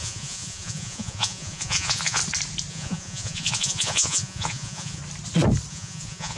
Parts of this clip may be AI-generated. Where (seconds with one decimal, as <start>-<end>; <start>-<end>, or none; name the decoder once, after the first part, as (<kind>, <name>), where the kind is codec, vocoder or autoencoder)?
0.0-2.2 (vocoder, Vocos); 2.7-5.0; 5.7-6.4